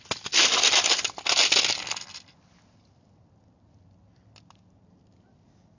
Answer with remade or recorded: recorded